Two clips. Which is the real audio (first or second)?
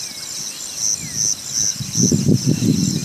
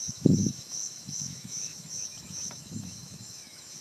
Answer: first